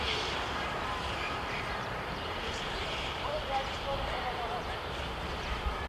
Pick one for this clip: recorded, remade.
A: remade